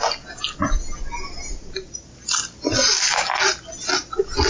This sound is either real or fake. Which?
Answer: real